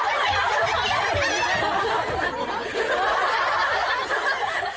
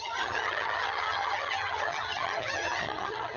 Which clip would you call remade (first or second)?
second